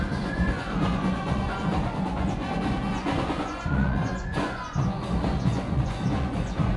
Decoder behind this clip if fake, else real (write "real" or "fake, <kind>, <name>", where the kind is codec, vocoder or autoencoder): fake, vocoder, Vocos